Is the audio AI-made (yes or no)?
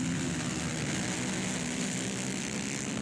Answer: no